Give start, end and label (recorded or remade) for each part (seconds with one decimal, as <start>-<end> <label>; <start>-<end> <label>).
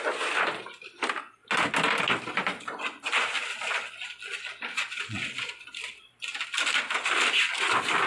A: 0.0-4.7 recorded; 4.7-5.7 remade; 5.7-8.1 recorded